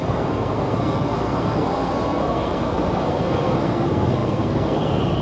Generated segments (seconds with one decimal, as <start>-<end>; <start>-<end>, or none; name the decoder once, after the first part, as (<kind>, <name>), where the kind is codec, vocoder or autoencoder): 0.0-5.2 (codec, SNAC)